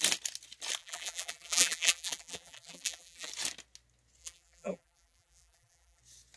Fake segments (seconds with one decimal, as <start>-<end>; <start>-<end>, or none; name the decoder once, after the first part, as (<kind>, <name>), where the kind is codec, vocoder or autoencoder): 0.8-3.3 (vocoder, BigVGAN v2); 4.2-6.0